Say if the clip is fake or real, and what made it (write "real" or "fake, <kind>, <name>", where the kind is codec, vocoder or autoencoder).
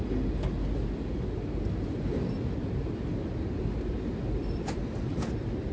real